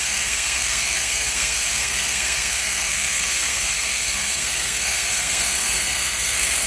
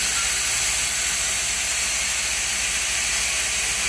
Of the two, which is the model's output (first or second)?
first